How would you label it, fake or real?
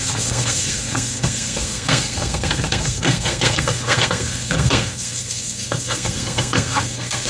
fake